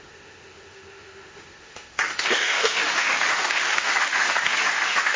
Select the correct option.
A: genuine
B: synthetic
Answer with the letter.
B